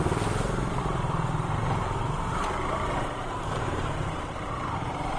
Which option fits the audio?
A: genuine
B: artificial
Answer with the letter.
B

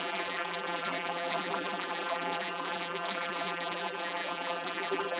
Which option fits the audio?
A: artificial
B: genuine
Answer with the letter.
A